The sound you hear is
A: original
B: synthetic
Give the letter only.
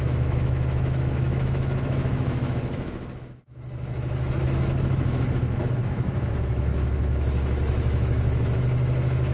B